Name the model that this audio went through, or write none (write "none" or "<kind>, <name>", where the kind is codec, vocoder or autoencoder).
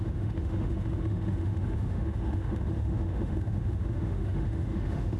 autoencoder, DAC-VAE